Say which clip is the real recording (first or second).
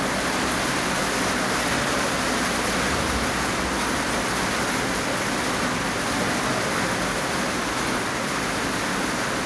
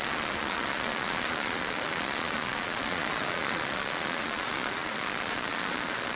first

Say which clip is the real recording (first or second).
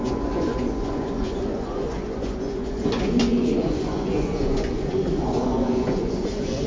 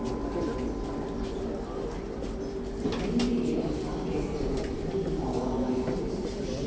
second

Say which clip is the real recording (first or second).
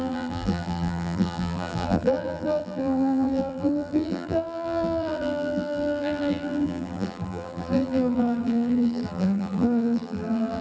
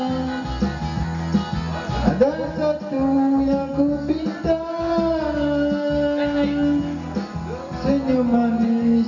second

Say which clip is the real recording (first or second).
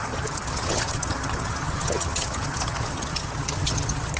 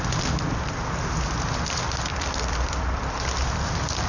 second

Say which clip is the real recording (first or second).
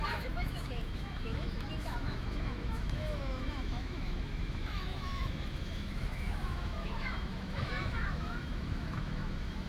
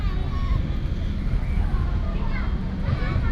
second